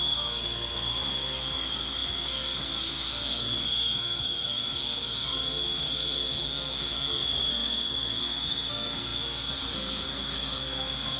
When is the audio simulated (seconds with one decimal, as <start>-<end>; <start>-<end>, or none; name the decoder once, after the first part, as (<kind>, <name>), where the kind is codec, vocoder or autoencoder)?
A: 0.0-11.2 (codec, SNAC)